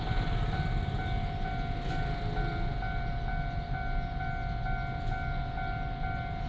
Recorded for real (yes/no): yes